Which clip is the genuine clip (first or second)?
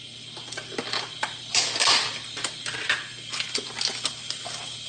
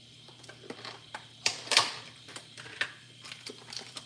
first